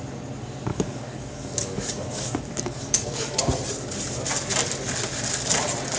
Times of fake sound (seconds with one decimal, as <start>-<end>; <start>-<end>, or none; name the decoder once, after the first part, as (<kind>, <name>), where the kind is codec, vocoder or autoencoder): 0.7-3.4 (codec, DAC)